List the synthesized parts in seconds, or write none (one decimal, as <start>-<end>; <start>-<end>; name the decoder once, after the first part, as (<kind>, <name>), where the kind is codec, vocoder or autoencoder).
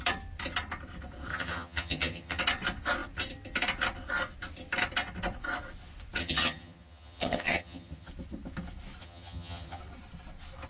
1.3-2.4 (vocoder, HiFi-GAN); 6.2-8.1; 9.0-9.8